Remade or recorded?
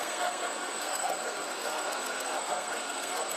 remade